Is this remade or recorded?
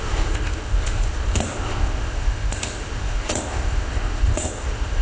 remade